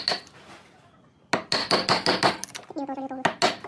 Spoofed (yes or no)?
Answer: no